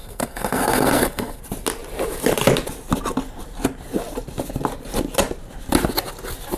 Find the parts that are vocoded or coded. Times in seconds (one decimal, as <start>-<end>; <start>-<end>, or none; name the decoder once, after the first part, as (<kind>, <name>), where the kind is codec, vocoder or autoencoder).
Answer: 0.0-1.4 (codec, SNAC)